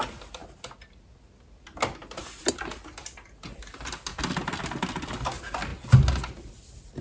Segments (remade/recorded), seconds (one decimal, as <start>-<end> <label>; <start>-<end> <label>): 0.0-7.0 recorded